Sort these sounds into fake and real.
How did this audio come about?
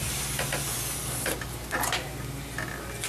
real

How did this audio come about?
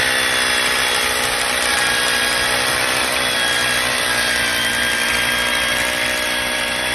real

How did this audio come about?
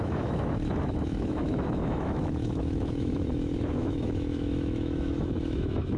fake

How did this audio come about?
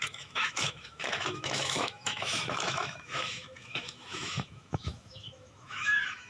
fake